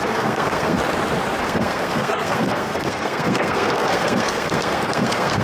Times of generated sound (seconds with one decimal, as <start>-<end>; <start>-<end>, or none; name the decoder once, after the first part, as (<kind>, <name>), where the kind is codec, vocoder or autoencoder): 0.0-0.8 (codec, SNAC); 1.4-5.4